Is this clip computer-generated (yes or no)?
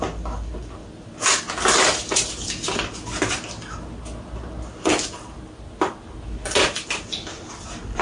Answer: no